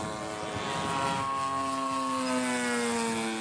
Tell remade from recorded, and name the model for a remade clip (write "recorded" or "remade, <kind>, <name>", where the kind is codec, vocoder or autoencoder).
recorded